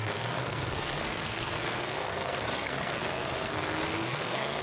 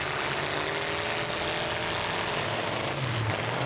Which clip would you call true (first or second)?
second